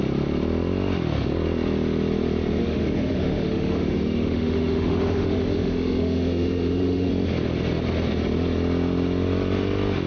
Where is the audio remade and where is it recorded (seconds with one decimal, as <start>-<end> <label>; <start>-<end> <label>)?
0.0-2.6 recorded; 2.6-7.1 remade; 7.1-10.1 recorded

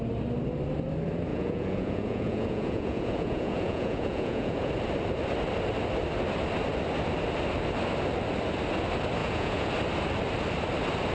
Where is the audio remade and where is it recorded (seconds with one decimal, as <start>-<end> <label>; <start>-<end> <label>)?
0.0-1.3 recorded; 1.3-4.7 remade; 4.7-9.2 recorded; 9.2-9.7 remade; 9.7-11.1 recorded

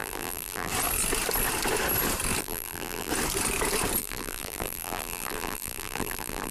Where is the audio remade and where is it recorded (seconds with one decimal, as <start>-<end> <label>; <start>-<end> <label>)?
0.0-0.7 remade; 0.7-2.4 recorded; 2.4-3.1 remade; 3.1-4.0 recorded; 4.0-6.5 remade

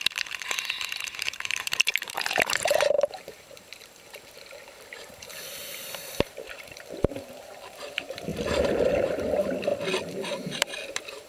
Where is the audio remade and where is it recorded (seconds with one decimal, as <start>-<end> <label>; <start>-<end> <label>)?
0.0-9.7 remade; 9.7-10.3 recorded; 10.3-11.3 remade

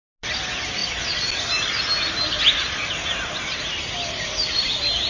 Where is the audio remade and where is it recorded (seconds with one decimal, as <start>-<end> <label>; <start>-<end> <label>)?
0.0-5.1 recorded

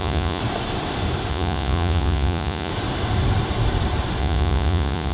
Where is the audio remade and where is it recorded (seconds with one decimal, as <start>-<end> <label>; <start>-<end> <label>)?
0.0-0.4 remade; 0.4-1.3 recorded; 1.3-2.7 remade; 2.7-4.2 recorded; 4.2-5.1 remade

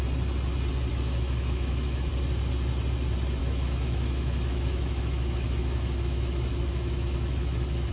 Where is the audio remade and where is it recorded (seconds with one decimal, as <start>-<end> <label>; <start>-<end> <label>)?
0.0-0.9 recorded; 0.9-2.1 remade; 2.1-3.4 recorded; 3.4-7.9 remade